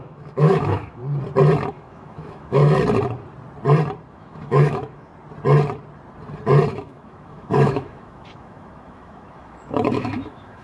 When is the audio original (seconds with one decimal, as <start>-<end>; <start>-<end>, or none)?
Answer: 1.0-1.7; 2.6-4.1; 5.1-6.7